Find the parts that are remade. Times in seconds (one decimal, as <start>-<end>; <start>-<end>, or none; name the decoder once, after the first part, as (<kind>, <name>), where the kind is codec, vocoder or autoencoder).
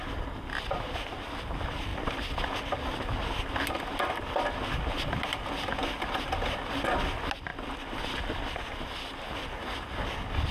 none